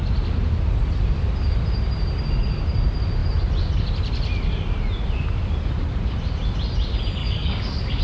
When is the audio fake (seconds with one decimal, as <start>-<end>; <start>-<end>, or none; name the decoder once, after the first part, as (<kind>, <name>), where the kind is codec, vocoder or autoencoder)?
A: 7.2-8.0 (codec, DAC)